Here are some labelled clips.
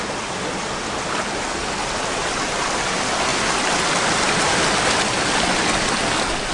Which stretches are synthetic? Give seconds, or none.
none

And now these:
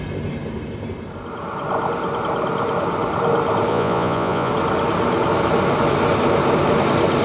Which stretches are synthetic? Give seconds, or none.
3.7-4.5 (vocoder, Vocos)